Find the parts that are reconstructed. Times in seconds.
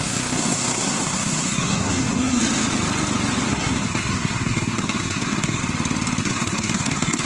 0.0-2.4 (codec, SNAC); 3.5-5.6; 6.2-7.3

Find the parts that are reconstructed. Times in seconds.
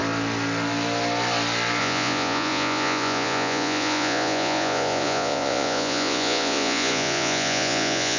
1.8-8.2 (vocoder, Vocos)